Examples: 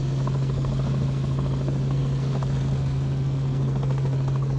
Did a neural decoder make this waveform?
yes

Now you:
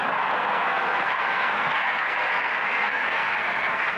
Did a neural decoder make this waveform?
yes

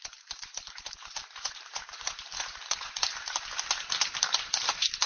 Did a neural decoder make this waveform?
yes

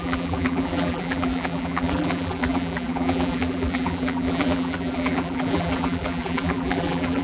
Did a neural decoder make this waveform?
yes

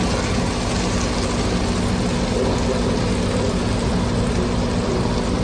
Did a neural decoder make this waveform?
no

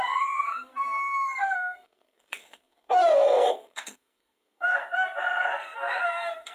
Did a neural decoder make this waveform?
yes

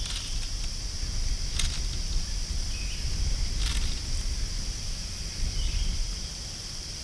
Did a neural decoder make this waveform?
no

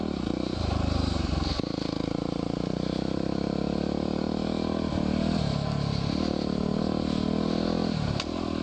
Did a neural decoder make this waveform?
no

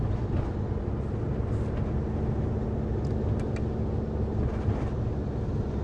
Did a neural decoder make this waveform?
no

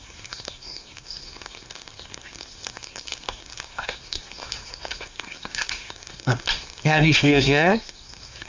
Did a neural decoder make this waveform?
yes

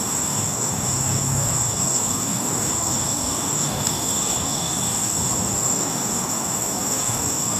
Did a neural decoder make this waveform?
yes